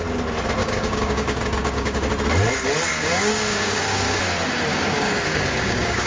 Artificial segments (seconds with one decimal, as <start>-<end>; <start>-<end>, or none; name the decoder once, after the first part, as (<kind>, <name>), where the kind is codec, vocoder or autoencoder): 0.6-2.1 (codec, DAC); 2.9-4.2; 4.7-6.1